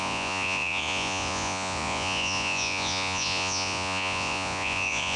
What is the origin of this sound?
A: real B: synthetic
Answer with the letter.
B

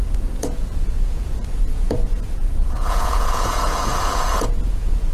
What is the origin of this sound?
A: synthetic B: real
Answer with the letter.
A